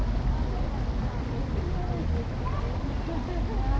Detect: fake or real real